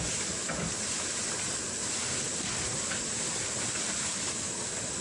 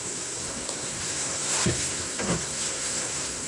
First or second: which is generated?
second